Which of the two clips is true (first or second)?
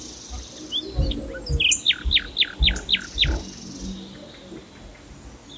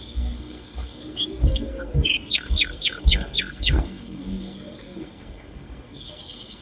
first